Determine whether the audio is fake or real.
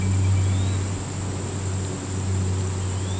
real